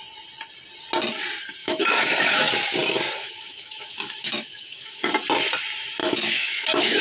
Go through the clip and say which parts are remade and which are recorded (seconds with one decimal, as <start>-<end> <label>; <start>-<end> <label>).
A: 0.0-1.6 recorded; 1.6-2.5 remade; 2.5-3.2 recorded; 3.2-5.1 remade; 5.1-6.0 recorded; 6.0-7.0 remade